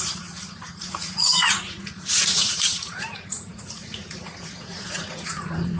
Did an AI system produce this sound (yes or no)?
yes